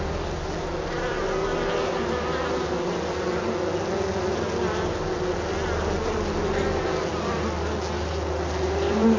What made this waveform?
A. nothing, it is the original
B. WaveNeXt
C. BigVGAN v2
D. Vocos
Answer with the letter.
A